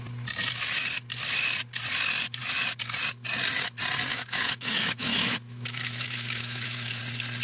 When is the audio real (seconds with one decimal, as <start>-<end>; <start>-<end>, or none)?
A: 0.0-4.1; 7.0-7.4